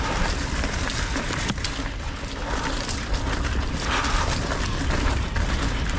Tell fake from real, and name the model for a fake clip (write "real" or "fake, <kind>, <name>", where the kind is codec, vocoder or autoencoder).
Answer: real